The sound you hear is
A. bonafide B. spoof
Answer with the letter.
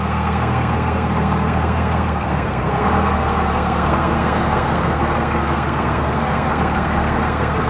B